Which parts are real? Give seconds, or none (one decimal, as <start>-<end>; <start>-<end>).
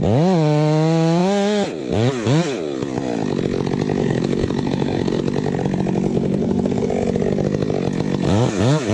0.0-4.0; 5.2-6.1; 6.9-8.9